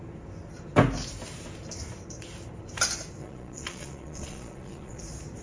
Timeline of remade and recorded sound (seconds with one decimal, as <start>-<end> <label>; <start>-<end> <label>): 0.0-3.2 recorded; 3.2-5.0 remade; 5.0-5.4 recorded